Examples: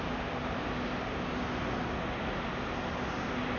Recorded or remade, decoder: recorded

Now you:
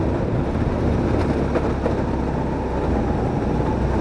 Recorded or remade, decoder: recorded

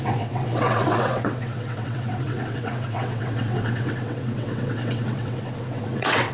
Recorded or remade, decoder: remade, vocoder, WaveNeXt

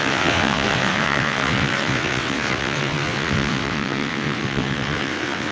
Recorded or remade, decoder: remade, vocoder, WaveNeXt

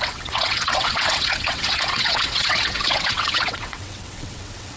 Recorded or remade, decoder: remade, vocoder, WaveNeXt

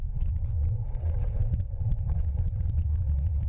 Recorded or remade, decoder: remade, vocoder, WaveNeXt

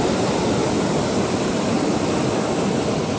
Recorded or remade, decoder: recorded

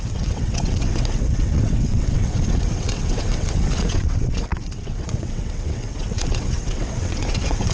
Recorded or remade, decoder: remade, vocoder, WaveNeXt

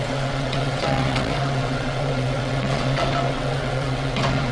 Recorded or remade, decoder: remade, vocoder, WaveNeXt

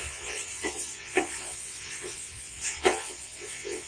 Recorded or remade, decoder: remade, vocoder, WaveNeXt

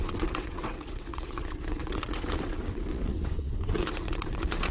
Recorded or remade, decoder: remade, vocoder, WaveNeXt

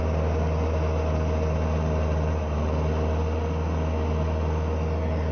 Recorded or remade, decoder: recorded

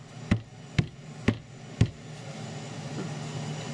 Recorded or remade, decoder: recorded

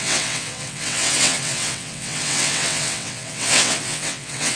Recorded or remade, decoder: remade, vocoder, WaveNeXt